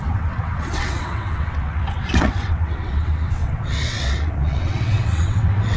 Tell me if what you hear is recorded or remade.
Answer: remade